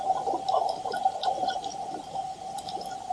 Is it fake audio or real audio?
fake